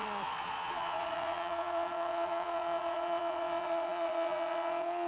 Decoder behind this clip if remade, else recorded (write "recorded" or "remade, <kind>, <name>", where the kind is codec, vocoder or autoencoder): remade, vocoder, Vocos